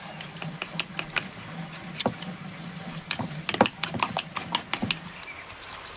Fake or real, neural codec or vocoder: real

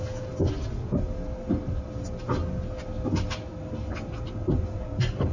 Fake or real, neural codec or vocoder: real